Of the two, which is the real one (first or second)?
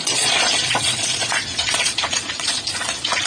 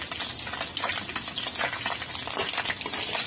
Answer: second